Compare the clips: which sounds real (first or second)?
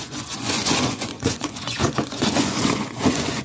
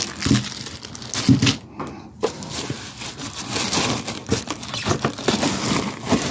second